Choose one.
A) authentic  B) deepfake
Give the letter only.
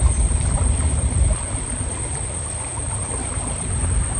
B